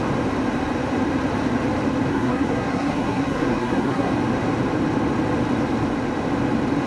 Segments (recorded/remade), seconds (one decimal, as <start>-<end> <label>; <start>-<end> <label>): 0.0-2.1 recorded; 2.1-4.1 remade; 4.1-6.9 recorded